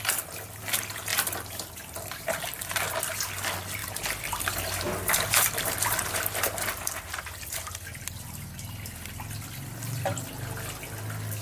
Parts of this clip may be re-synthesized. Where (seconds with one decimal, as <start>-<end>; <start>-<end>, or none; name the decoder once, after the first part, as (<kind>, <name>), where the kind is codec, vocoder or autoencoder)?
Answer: 1.1-2.8 (vocoder, BigVGAN v2)